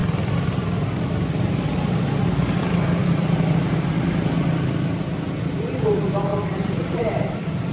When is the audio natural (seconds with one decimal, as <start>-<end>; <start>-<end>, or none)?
0.0-6.3; 7.1-7.7